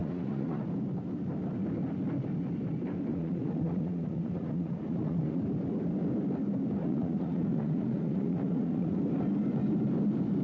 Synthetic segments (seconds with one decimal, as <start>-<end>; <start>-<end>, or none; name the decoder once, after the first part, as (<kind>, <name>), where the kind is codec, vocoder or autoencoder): 0.0-0.6 (vocoder, Vocos); 3.1-5.4; 6.8-9.0